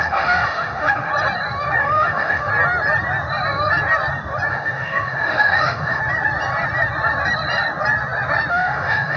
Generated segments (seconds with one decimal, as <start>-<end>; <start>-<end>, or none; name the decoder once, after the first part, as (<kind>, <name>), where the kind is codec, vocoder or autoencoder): 0.0-1.1 (autoencoder, DAC-VAE); 1.8-2.5; 4.5-6.0; 8.5-9.2